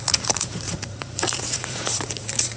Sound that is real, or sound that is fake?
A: fake